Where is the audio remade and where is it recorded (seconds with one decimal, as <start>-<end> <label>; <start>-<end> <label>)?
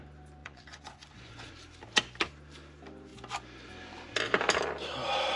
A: 0.0-0.4 recorded; 0.4-1.5 remade; 1.5-5.4 recorded